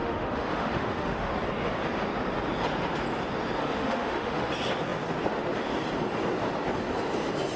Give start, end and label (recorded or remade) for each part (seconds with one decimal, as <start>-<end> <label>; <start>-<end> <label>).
0.0-1.3 remade; 1.3-3.6 recorded; 3.6-4.5 remade; 4.5-7.6 recorded